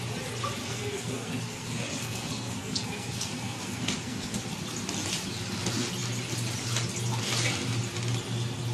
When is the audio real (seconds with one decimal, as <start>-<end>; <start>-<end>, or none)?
0.0-0.6; 4.5-8.7